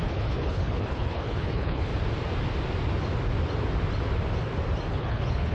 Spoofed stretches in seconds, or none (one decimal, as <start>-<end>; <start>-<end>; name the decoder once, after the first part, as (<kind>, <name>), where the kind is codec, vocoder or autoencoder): 0.0-1.9 (codec, HILCodec); 4.9-5.5